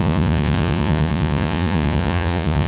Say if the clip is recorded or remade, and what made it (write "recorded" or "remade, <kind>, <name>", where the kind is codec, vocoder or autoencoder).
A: remade, vocoder, Vocos